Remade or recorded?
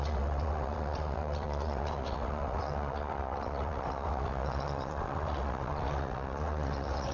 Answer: remade